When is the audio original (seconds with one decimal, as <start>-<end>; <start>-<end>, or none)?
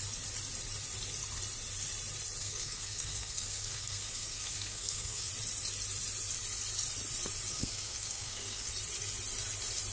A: 0.0-2.4; 5.3-7.5; 8.7-9.9